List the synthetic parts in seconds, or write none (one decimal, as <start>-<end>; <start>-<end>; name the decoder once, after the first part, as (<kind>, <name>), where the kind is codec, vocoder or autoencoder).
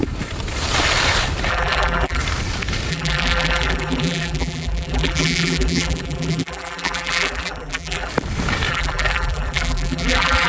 1.5-2.2 (vocoder, BigVGAN v2); 2.9-8.1; 8.7-10.5